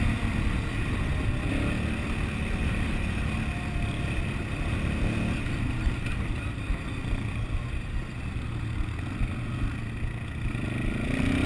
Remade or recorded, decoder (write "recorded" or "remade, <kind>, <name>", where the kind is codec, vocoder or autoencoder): recorded